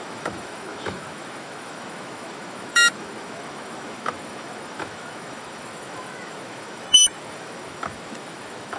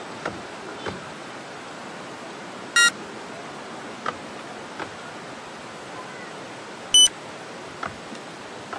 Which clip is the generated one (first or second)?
first